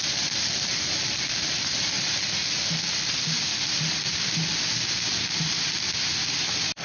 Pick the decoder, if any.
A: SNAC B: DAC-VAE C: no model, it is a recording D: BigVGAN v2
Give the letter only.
D